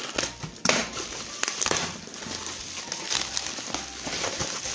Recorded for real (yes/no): yes